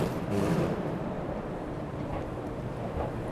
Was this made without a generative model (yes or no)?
no